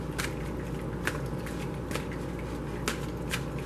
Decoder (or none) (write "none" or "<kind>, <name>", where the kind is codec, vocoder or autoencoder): none